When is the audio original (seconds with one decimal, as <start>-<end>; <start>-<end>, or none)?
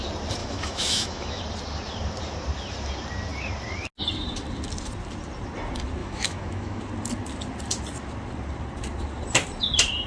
0.0-0.4; 1.4-6.0; 6.8-10.1